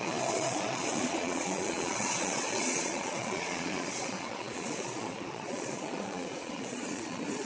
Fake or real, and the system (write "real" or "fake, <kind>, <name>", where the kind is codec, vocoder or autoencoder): fake, vocoder, Vocos